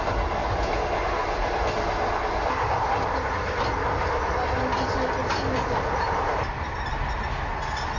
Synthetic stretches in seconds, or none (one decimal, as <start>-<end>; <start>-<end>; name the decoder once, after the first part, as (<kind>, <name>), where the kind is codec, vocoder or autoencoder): none

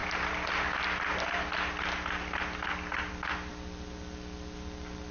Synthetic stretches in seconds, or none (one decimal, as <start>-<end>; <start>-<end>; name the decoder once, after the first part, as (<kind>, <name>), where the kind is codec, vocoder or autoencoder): none

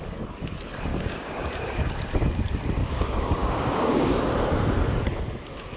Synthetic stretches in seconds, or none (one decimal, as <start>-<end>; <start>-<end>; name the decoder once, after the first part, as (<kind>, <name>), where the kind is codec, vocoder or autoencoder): 0.9-1.5 (codec, DAC); 2.8-4.2

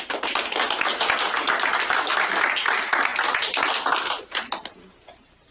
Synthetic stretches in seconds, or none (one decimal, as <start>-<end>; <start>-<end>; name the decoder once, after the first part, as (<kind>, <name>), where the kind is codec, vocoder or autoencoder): none

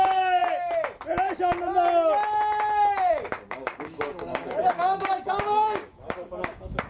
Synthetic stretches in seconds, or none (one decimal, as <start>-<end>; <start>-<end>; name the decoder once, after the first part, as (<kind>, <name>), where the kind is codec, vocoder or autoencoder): 0.0-0.4 (codec, DAC); 3.1-6.9

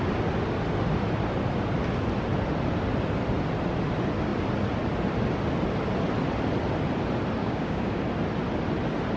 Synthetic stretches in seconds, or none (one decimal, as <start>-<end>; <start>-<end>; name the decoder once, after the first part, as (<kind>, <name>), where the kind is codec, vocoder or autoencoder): 7.4-8.0 (codec, DAC)

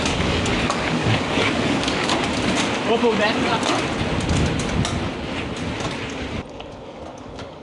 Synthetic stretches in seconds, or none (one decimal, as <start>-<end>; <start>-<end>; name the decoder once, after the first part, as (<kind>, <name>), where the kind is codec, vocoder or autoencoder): 0.0-2.1 (codec, DAC); 6.7-7.6